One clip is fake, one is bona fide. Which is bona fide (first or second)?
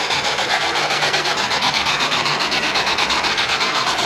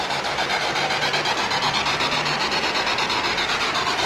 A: second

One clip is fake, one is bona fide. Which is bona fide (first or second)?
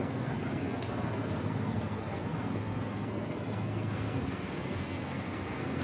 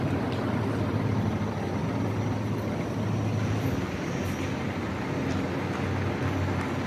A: second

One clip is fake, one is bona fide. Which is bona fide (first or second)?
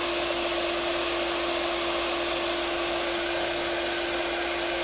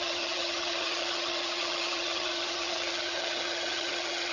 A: first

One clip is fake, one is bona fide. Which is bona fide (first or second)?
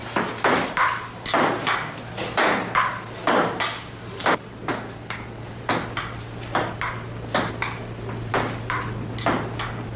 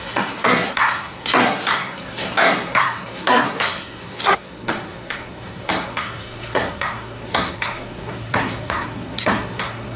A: first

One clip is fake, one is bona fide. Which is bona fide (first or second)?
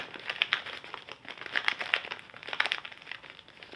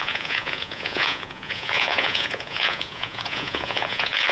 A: first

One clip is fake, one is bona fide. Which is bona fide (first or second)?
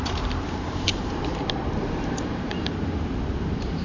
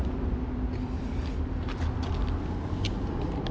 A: second